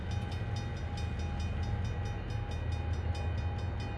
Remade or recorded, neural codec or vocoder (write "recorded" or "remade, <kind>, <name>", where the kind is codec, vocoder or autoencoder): recorded